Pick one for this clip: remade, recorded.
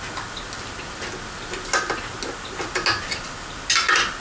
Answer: recorded